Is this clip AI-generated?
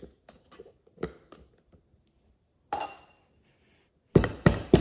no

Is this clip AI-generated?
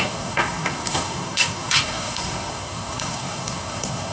yes